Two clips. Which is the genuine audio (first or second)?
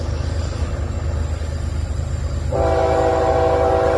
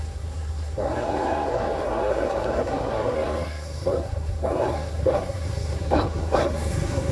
first